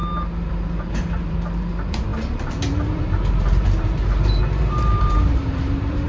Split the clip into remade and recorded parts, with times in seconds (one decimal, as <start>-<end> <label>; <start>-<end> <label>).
0.0-0.5 recorded; 0.5-6.1 remade